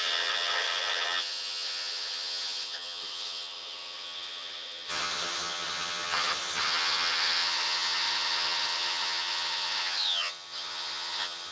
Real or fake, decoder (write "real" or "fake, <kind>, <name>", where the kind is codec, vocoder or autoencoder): fake, vocoder, HiFi-GAN